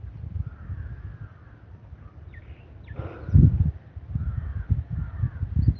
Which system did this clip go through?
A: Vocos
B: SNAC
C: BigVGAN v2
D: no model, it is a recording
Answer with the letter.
D